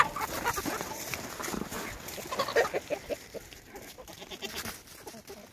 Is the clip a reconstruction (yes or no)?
no